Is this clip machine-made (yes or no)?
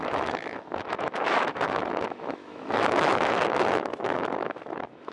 yes